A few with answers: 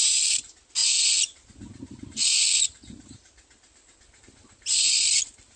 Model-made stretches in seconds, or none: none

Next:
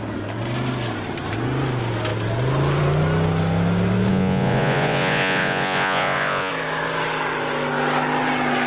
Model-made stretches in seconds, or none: 4.1-6.5 (vocoder, Vocos)

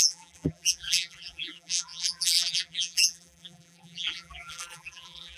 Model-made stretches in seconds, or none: 0.0-5.4 (vocoder, BigVGAN v2)

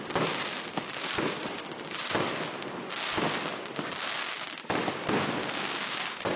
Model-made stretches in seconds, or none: 5.4-6.4 (codec, DAC)

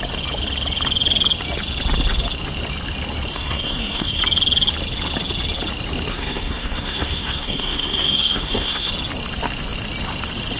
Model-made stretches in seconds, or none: 3.3-4.2 (codec, SNAC); 6.1-8.9